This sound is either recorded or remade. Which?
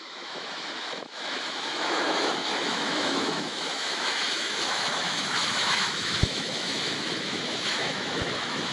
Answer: remade